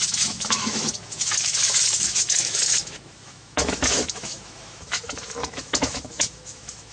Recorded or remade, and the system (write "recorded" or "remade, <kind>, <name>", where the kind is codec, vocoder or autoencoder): remade, autoencoder, DAC-VAE